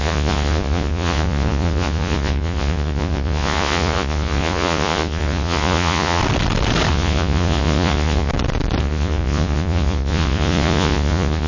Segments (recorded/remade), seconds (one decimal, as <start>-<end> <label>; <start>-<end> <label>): 0.0-6.2 remade; 6.2-6.9 recorded; 6.9-8.3 remade; 8.3-8.8 recorded; 8.8-11.5 remade